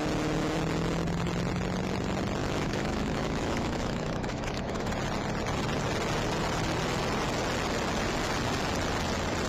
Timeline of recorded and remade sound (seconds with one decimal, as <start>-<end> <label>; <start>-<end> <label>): 0.0-2.4 recorded; 2.4-4.9 remade; 4.9-9.5 recorded